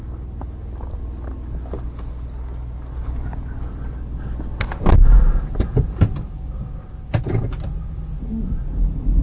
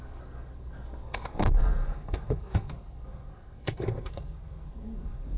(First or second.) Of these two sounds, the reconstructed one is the second